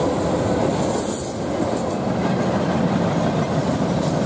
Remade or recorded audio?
recorded